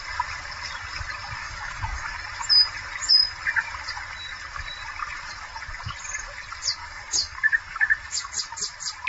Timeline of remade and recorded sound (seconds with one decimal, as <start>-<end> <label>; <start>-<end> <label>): 0.0-1.4 recorded; 1.4-2.2 remade; 2.2-6.8 recorded; 6.8-8.3 remade; 8.3-9.1 recorded